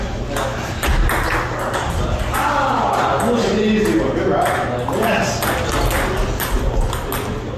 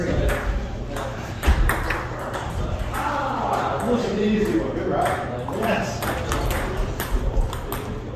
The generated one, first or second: second